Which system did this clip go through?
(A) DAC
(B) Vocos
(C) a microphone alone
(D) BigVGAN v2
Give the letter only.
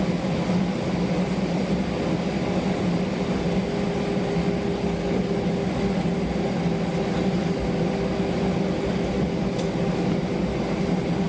C